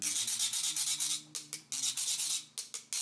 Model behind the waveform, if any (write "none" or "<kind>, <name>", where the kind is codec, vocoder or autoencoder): none